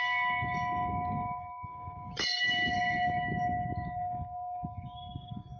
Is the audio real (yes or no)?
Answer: no